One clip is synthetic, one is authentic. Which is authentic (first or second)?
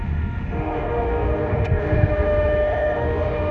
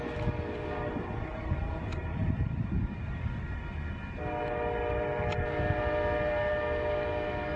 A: second